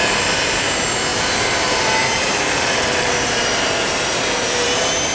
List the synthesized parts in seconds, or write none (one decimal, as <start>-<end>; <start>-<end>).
0.0-5.1